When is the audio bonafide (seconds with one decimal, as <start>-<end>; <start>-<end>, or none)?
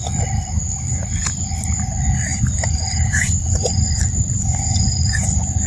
0.0-0.9; 1.5-2.3